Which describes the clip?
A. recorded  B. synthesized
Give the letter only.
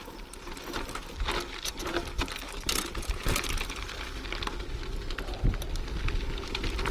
A